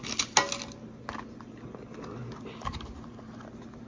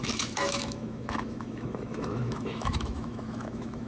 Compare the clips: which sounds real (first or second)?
first